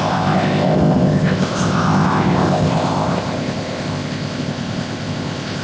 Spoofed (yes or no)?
yes